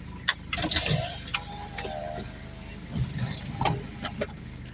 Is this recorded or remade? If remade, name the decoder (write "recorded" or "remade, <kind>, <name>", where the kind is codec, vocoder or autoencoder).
recorded